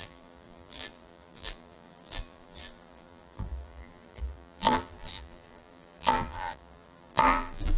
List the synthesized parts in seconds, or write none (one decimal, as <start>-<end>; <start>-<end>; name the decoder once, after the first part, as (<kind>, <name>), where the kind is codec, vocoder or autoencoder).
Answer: 0.0-7.8 (vocoder, BigVGAN v2)